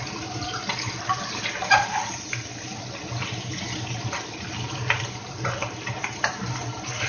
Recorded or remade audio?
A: recorded